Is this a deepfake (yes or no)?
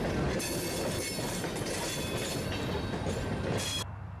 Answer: no